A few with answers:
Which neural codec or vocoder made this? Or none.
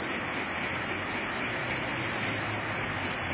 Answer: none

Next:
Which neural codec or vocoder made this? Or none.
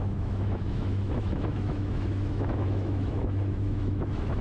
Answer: autoencoder, DAC-VAE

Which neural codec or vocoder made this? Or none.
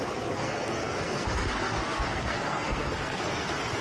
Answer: codec, SNAC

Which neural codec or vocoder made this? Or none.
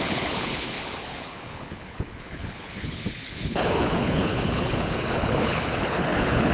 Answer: codec, HILCodec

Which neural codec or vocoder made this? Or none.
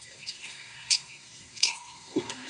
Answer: codec, SNAC